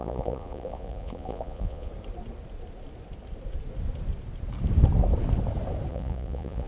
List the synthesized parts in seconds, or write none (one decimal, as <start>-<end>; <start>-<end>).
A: 0.0-1.9; 5.9-6.7